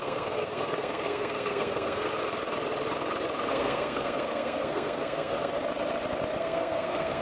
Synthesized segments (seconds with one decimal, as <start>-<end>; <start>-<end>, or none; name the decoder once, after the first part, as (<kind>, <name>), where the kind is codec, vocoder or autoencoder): 0.0-2.1 (codec, SNAC); 3.5-5.5; 6.4-7.2